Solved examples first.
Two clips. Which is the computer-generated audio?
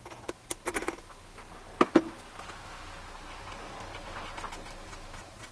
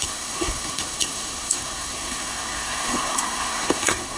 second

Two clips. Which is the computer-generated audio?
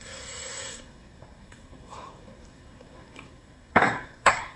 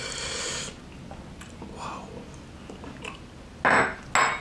first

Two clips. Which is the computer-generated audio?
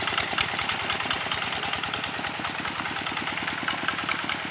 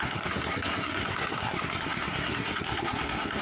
second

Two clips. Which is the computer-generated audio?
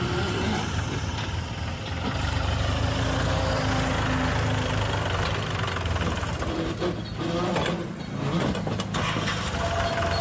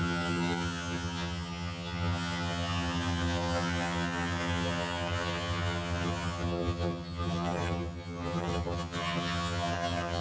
second